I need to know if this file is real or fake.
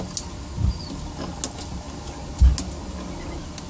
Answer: real